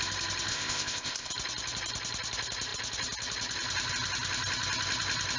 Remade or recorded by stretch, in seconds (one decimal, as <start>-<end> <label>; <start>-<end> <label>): 0.0-0.5 recorded; 0.5-1.3 remade; 1.3-5.4 recorded